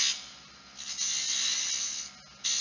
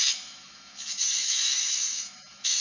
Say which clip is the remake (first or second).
second